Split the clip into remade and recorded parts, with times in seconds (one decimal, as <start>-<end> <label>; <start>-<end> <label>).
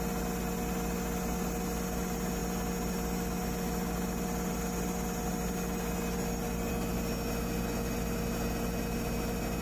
0.0-9.6 recorded